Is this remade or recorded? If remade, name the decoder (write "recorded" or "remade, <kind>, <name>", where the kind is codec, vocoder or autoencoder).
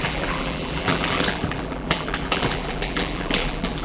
remade, vocoder, BigVGAN v2